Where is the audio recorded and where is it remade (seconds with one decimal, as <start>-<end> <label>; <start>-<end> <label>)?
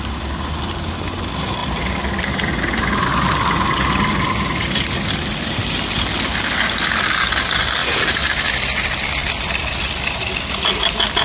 0.0-11.2 recorded